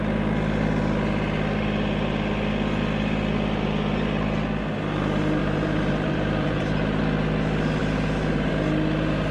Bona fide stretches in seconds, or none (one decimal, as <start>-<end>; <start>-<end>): 0.0-5.4; 7.0-7.8; 8.5-9.3